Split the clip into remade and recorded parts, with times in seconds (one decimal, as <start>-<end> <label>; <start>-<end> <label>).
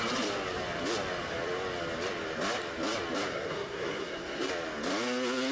0.0-3.3 recorded; 3.3-4.5 remade; 4.5-5.5 recorded